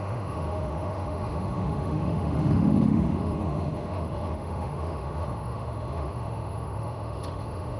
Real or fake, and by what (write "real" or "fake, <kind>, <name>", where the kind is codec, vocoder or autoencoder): fake, autoencoder, DAC-VAE